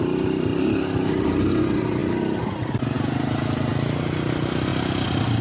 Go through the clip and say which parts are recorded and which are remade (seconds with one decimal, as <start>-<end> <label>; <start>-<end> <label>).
0.0-5.4 recorded